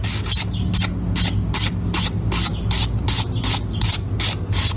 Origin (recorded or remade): recorded